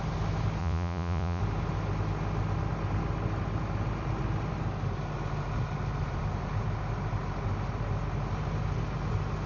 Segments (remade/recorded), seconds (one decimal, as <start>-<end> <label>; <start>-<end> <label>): 0.0-0.6 recorded; 0.6-1.4 remade; 1.4-9.5 recorded